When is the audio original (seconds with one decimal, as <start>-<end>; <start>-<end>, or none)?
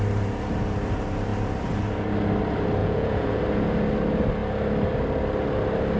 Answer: 0.0-2.8; 3.4-6.0